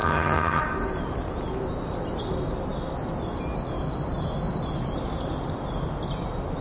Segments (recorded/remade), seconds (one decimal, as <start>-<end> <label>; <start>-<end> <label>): 0.0-0.6 remade; 0.6-6.6 recorded